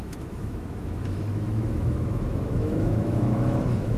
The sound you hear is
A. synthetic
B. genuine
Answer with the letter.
A